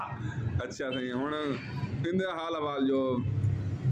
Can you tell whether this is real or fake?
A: real